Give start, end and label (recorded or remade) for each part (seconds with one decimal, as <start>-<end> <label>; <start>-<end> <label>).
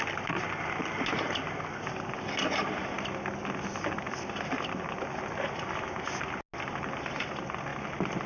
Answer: 0.0-8.3 recorded